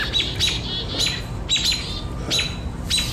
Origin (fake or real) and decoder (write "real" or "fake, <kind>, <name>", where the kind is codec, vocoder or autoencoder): real